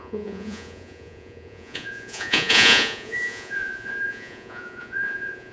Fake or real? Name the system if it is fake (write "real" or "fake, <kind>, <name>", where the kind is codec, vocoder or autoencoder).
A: fake, vocoder, Vocos